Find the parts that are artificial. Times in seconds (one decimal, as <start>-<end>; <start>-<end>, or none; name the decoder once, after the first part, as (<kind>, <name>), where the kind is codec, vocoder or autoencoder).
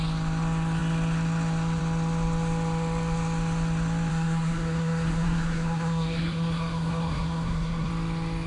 4.1-7.9 (codec, SNAC)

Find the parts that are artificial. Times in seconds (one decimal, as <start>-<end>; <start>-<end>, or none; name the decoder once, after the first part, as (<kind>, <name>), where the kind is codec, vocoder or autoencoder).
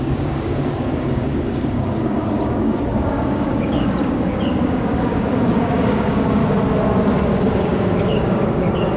0.0-6.4 (codec, DAC); 7.3-9.0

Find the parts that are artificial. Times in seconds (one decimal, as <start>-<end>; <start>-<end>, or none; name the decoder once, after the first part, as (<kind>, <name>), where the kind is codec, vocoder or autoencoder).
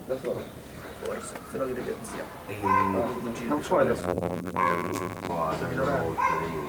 4.0-5.3 (vocoder, BigVGAN v2)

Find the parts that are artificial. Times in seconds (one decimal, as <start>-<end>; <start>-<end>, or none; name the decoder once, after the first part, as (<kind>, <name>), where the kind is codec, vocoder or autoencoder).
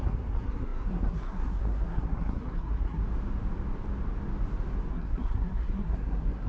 0.0-3.0 (codec, SNAC); 4.9-6.5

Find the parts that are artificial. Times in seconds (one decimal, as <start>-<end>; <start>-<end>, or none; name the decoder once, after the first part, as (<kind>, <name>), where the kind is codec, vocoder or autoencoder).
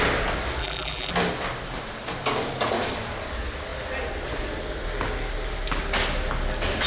0.6-1.1 (vocoder, BigVGAN v2)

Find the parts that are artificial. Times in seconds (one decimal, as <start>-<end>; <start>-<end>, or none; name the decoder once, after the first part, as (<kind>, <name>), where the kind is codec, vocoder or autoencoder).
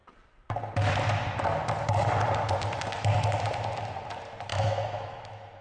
4.5-5.6 (autoencoder, DAC-VAE)